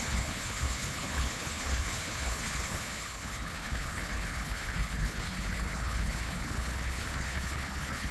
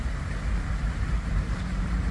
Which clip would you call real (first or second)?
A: second